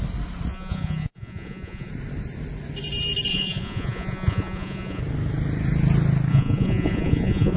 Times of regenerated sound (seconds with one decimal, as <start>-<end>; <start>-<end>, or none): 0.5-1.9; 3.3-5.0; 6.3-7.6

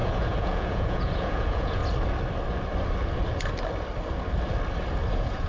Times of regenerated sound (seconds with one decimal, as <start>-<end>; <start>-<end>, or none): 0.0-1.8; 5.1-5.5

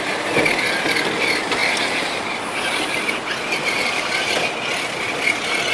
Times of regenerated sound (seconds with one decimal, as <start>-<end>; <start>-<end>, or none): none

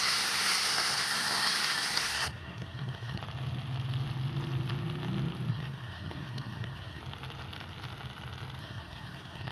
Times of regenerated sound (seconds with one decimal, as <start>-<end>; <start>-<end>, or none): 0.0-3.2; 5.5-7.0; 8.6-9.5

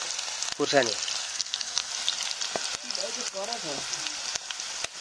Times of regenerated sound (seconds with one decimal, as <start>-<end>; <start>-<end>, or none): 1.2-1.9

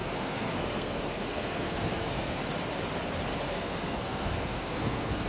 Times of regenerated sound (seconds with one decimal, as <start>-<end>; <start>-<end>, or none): 0.0-2.4; 3.4-5.3